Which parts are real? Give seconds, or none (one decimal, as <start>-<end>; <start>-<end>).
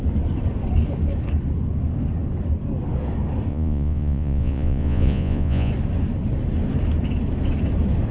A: 0.0-3.5; 5.7-8.1